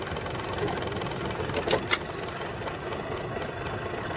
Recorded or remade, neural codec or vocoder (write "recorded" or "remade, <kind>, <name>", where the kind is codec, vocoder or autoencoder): recorded